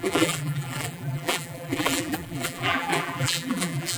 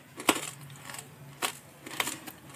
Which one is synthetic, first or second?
first